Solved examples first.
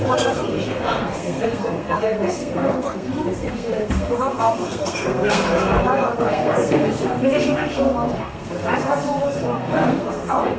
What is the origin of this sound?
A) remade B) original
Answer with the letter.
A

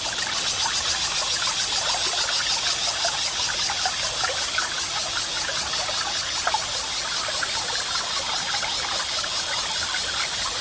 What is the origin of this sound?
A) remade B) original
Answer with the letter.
B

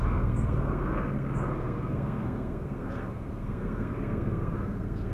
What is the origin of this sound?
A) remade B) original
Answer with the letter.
A